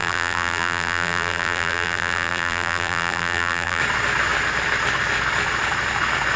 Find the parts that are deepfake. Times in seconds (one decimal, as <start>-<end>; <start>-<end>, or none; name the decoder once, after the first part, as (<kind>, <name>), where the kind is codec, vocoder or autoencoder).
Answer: 0.0-3.8 (vocoder, BigVGAN v2)